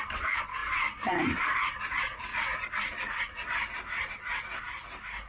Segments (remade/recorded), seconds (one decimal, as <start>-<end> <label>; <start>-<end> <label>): 0.0-2.3 remade; 2.3-4.1 recorded; 4.1-5.3 remade